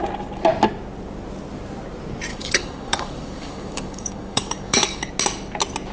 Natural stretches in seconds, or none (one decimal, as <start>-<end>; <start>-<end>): 0.0-2.3; 5.1-5.9